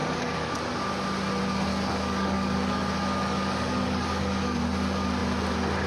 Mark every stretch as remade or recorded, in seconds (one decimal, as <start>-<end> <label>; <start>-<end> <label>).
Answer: 0.0-0.5 remade; 0.5-1.7 recorded; 1.7-4.6 remade; 4.6-5.9 recorded